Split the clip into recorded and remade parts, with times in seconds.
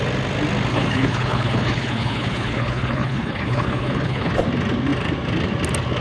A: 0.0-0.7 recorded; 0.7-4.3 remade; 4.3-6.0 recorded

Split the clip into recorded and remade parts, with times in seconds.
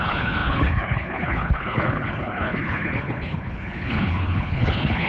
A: 0.0-5.1 remade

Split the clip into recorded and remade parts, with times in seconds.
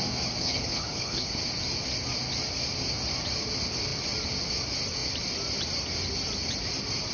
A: 0.0-0.4 recorded; 0.4-1.4 remade; 1.4-7.1 recorded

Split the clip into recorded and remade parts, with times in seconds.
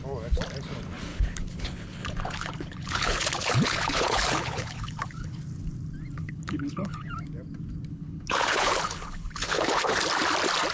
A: 0.0-1.1 recorded; 1.1-5.4 remade; 5.4-6.2 recorded; 6.2-7.1 remade; 7.1-7.9 recorded; 7.9-9.9 remade; 9.9-10.7 recorded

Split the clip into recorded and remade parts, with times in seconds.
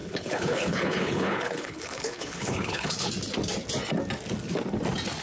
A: 0.0-3.1 remade; 3.1-5.2 recorded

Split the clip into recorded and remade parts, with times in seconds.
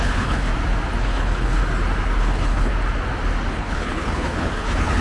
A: 0.0-0.5 remade; 0.5-1.0 recorded; 1.0-1.6 remade; 1.6-2.2 recorded; 2.2-2.7 remade; 2.7-3.5 recorded; 3.5-5.0 remade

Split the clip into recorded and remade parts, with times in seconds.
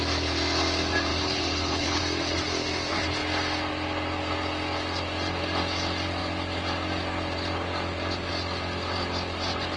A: 0.0-1.1 recorded; 1.1-2.0 remade; 2.0-9.8 recorded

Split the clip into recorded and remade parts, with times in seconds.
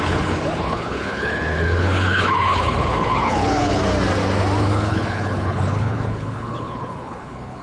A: 0.0-3.8 remade; 3.8-4.6 recorded; 4.6-7.6 remade